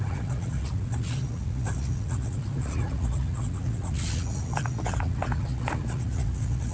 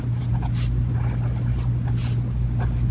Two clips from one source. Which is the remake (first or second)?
first